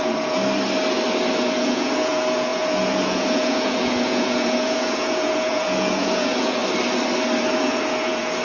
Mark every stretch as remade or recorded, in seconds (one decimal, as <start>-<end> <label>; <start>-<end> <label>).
0.0-0.4 remade; 0.4-1.4 recorded; 1.4-6.6 remade; 6.6-7.4 recorded; 7.4-8.4 remade